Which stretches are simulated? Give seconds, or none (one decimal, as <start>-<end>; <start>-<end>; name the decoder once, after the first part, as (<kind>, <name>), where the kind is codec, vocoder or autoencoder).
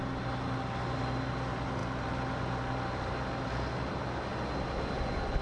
none